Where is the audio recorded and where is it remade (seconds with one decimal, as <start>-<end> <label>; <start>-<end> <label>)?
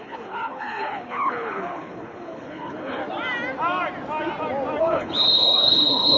0.0-3.0 remade; 3.0-4.8 recorded; 4.8-6.2 remade